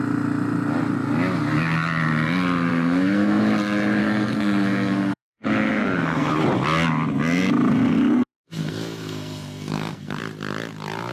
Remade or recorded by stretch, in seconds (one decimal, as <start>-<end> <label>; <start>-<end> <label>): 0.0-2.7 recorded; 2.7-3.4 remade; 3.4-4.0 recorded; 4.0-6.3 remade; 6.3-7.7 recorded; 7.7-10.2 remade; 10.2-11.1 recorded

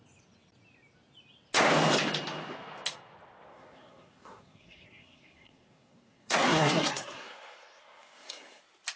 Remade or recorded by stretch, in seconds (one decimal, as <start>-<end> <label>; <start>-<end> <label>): 0.0-3.5 recorded; 3.5-8.6 remade; 8.6-9.0 recorded

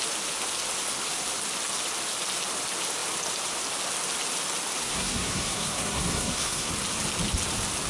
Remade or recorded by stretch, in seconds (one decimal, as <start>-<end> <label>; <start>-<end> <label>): 0.0-4.8 recorded; 4.8-6.7 remade; 6.7-7.9 recorded